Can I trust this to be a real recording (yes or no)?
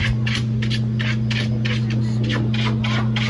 yes